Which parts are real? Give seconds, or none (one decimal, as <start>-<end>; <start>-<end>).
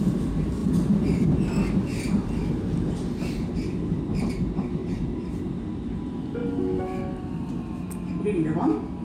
0.0-4.8; 5.4-9.0